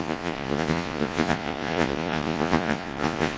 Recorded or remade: remade